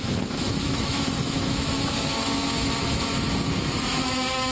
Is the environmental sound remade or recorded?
remade